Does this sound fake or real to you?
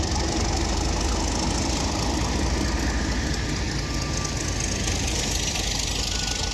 real